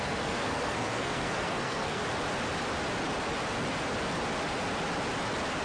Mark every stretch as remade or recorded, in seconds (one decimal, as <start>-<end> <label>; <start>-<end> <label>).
0.0-2.0 remade; 2.0-5.6 recorded